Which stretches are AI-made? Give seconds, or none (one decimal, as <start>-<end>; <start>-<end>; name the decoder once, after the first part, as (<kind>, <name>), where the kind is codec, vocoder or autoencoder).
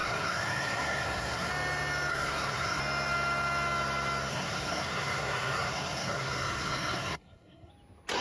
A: 0.0-1.5 (codec, SNAC); 2.1-2.8; 4.3-7.7